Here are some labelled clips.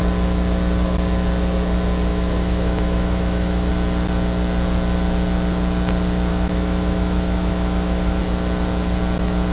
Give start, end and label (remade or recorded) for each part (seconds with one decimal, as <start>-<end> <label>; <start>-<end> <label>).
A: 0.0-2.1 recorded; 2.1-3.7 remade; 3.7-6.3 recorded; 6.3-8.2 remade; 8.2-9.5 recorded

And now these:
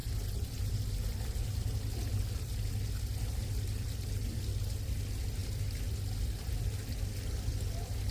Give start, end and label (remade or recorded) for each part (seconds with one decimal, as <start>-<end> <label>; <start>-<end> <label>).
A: 0.0-8.1 recorded

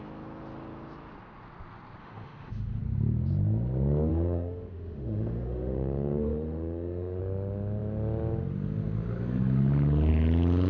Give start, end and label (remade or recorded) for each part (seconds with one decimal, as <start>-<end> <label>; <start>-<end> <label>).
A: 0.0-2.0 recorded; 2.0-2.8 remade; 2.8-4.1 recorded; 4.1-7.2 remade; 7.2-10.7 recorded

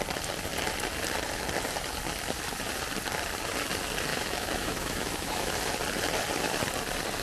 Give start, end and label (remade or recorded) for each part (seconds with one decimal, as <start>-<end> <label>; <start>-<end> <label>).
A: 0.0-4.1 recorded; 4.1-5.5 remade; 5.5-7.2 recorded